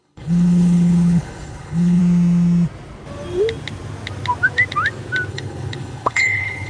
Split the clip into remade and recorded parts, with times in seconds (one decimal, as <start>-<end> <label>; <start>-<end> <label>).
0.0-2.0 remade; 2.0-5.3 recorded; 5.3-6.7 remade

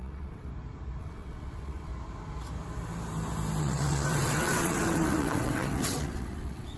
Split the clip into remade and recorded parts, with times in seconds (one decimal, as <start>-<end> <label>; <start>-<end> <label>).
0.0-0.5 remade; 0.5-1.0 recorded; 1.0-1.9 remade; 1.9-3.6 recorded; 3.6-6.8 remade